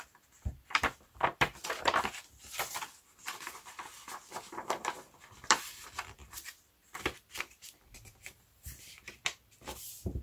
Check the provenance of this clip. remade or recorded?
remade